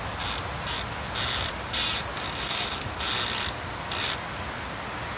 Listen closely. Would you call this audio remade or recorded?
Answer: recorded